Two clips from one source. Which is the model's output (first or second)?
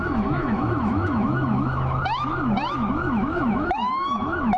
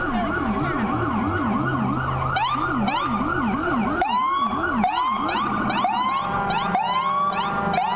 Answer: first